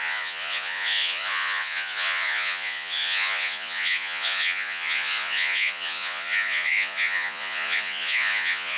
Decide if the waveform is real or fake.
fake